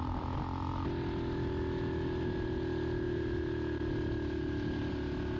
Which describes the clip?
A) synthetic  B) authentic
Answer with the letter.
B